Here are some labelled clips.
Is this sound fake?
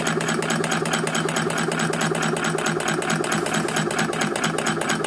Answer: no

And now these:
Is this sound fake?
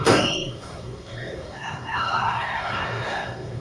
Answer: yes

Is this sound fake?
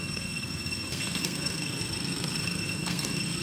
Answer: yes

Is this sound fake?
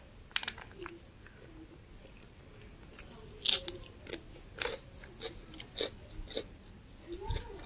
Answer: no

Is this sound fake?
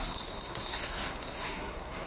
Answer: yes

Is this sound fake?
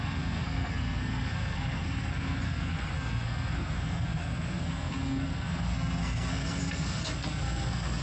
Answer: yes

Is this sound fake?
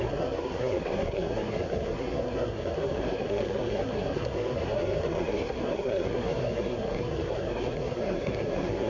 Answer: yes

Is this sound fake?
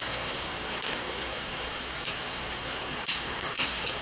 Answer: yes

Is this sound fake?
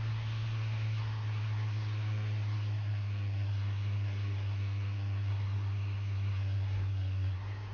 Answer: yes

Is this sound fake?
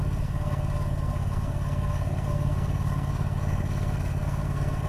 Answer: yes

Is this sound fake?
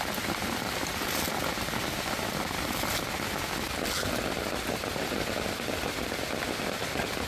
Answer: no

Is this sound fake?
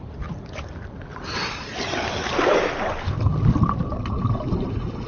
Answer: no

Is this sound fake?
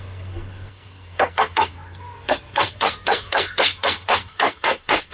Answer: yes